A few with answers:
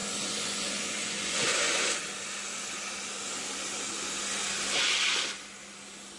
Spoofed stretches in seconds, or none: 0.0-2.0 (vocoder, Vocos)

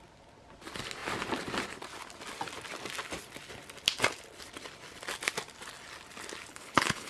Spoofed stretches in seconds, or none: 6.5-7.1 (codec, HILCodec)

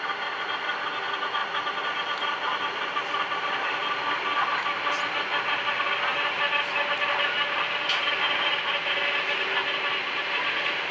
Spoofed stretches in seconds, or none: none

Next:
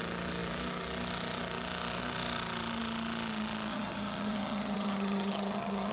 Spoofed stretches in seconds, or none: 3.7-5.9 (vocoder, HiFi-GAN)

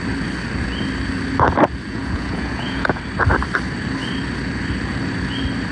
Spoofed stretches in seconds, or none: 1.9-3.0 (vocoder, Vocos)

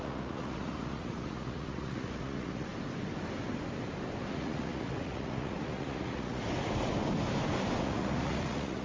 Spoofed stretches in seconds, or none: 0.0-2.7 (vocoder, Vocos); 4.3-6.4; 7.8-8.8

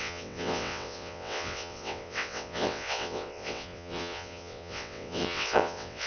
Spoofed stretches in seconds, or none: 0.0-6.1 (vocoder, WaveNeXt)

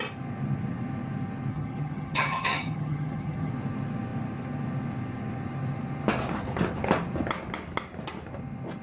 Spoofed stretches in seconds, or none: 1.5-3.5 (vocoder, HiFi-GAN)